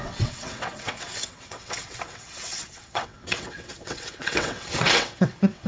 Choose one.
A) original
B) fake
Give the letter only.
B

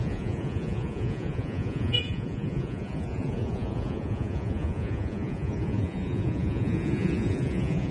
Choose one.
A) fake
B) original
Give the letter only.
A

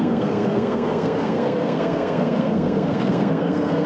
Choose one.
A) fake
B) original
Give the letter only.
A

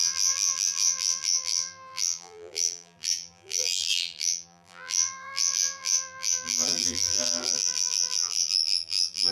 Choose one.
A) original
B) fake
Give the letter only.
B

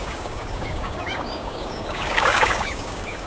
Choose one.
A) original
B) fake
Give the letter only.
B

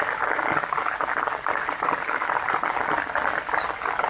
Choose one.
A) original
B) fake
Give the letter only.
A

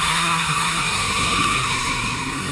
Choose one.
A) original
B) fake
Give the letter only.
B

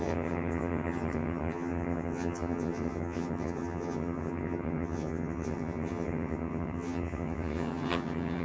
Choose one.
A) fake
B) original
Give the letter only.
A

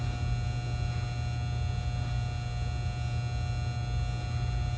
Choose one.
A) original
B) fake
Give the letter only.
A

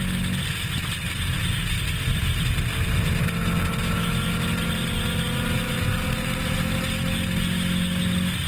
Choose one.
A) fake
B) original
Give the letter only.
B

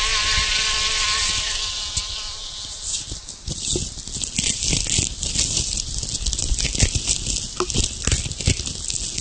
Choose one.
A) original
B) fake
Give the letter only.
A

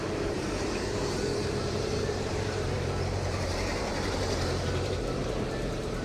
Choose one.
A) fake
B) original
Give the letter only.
A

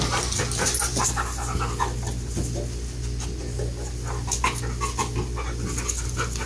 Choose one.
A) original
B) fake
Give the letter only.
A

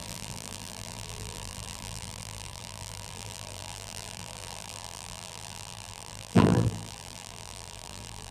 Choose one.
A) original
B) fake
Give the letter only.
B